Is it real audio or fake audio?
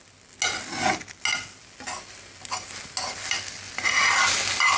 real